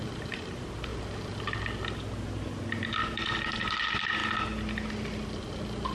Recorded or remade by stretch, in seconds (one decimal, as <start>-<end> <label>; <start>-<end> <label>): 0.0-0.9 remade; 0.9-2.6 recorded; 2.6-4.2 remade; 4.2-5.1 recorded; 5.1-5.9 remade